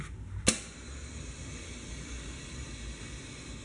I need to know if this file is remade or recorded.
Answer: recorded